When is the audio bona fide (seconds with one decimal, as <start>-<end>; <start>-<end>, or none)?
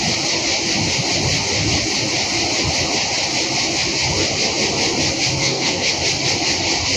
0.0-5.4; 6.0-7.0